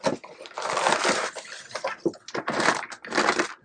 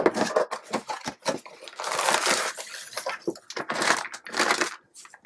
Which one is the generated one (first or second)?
first